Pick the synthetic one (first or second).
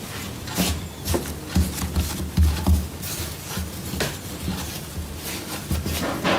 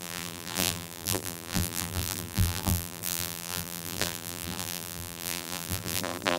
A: second